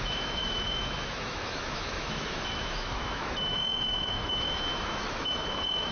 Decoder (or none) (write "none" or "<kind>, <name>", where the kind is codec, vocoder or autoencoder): autoencoder, DAC-VAE